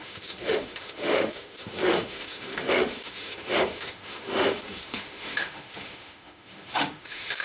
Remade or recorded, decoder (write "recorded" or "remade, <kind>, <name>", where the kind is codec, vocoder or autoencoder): remade, autoencoder, DAC-VAE